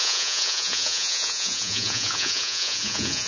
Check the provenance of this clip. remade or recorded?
remade